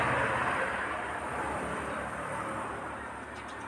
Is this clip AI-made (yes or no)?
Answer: no